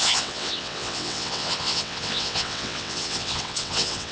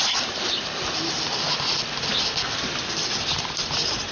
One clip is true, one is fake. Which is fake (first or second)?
first